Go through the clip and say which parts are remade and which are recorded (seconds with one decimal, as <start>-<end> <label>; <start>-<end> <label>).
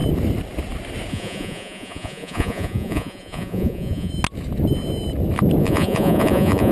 0.0-1.1 recorded; 1.1-4.1 remade; 4.1-5.6 recorded; 5.6-6.7 remade